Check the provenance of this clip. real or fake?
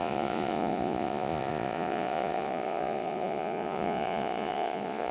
fake